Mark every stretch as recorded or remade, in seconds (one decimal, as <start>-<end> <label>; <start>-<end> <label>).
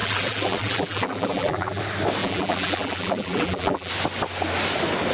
0.0-1.8 remade; 1.8-2.2 recorded; 2.2-3.9 remade; 3.9-5.1 recorded